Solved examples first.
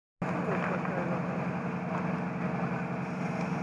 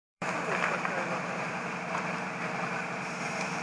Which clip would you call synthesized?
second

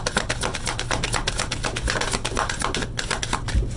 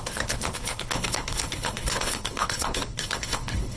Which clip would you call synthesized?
second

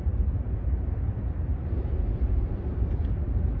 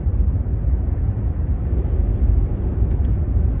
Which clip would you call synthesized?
first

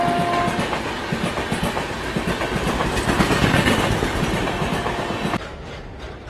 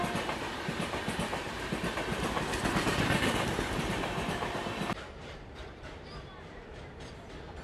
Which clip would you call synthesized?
second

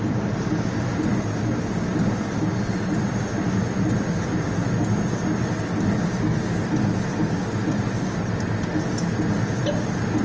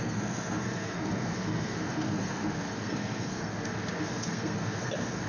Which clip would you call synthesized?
second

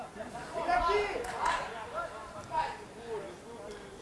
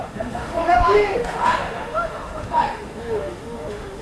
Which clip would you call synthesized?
second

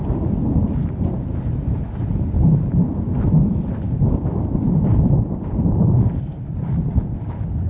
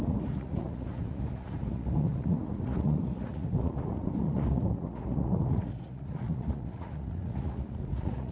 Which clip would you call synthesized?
second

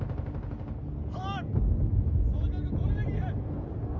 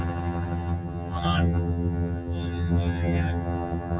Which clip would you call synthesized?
second